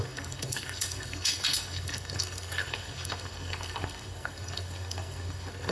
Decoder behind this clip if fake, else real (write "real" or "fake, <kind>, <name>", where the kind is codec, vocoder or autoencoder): fake, codec, SNAC